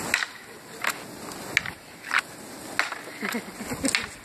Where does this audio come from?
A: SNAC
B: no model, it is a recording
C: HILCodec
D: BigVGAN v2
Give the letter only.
B